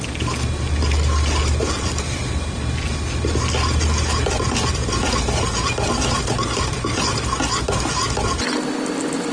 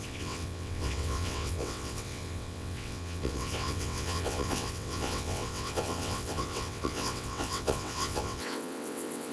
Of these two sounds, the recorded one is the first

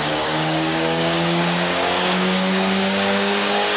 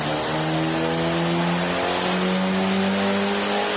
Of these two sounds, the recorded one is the second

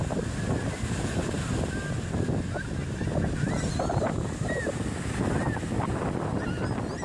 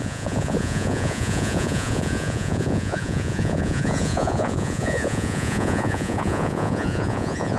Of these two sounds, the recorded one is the first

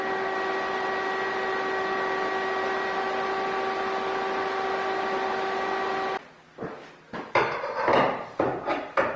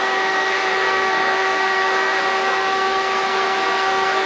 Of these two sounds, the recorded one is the first